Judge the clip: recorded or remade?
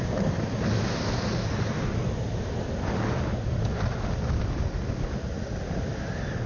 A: recorded